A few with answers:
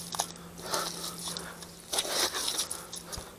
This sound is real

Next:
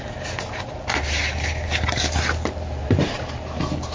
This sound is real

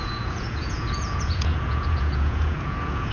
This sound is fake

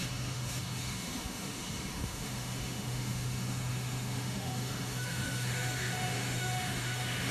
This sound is fake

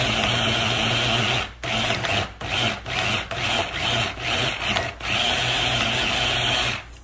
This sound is real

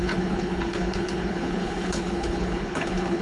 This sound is fake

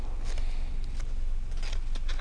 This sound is real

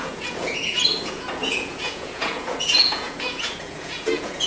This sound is fake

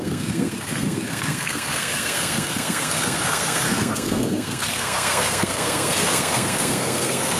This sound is fake